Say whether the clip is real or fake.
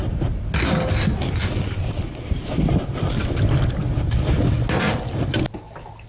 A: real